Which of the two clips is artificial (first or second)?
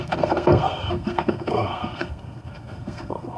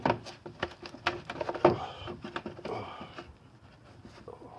first